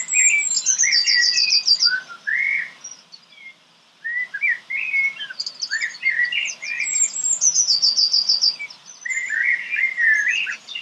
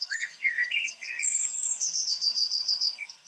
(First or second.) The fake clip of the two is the second